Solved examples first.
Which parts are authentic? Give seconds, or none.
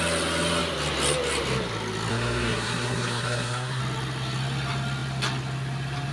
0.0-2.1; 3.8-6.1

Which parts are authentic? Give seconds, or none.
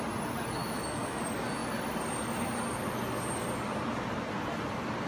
0.0-0.6; 1.2-5.1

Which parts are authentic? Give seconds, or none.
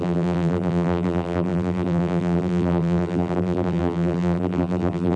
none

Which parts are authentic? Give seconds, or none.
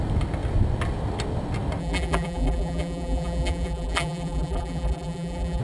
0.0-1.8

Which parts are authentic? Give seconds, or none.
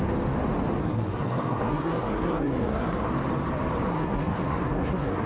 0.0-0.8; 3.1-3.9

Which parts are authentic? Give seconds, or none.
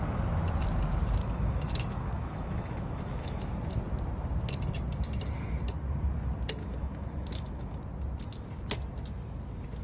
0.0-1.2; 3.5-6.6; 7.8-9.8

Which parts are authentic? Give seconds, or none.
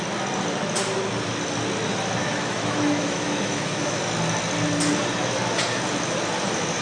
0.0-2.2; 4.0-6.8